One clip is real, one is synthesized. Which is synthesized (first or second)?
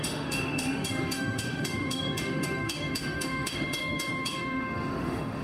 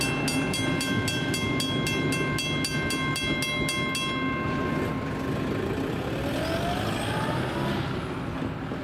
first